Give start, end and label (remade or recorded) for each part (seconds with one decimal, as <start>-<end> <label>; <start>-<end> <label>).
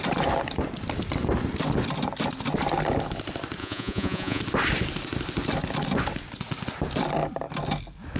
0.0-3.6 recorded; 3.6-4.4 remade; 4.4-8.2 recorded